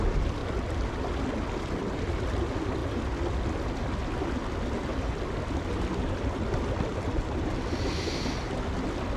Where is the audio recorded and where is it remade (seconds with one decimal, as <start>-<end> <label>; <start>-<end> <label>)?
0.0-9.2 recorded